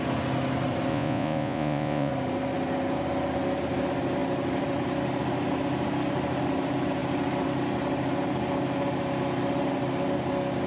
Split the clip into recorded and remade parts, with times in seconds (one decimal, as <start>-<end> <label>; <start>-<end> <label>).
0.0-0.9 recorded; 0.9-2.1 remade; 2.1-10.7 recorded